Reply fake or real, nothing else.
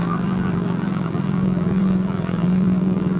fake